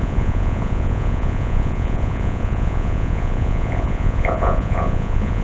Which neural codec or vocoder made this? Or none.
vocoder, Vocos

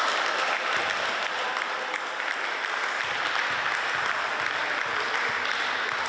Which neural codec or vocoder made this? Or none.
none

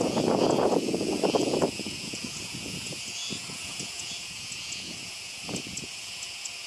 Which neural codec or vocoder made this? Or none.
vocoder, Vocos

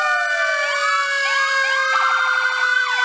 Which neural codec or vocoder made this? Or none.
none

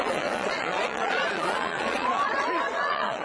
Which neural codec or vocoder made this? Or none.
vocoder, Vocos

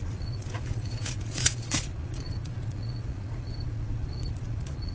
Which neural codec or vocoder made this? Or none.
vocoder, Vocos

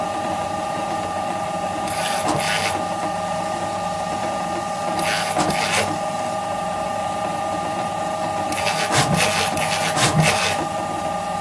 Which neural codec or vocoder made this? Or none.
none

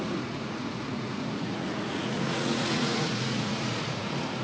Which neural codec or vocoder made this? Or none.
vocoder, Vocos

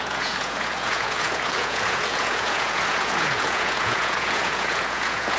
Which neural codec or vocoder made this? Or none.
vocoder, Vocos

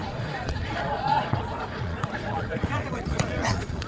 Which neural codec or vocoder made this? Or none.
vocoder, Vocos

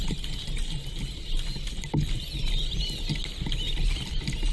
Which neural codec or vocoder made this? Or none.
none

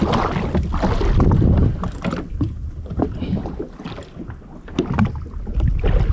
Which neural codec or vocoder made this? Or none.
none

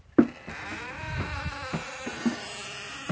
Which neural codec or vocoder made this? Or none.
none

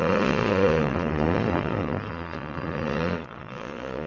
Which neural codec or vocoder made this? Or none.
vocoder, Vocos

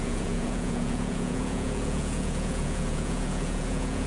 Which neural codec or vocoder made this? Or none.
vocoder, Vocos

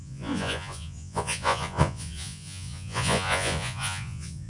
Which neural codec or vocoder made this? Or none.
vocoder, Vocos